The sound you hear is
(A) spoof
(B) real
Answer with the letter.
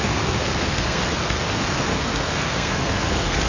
A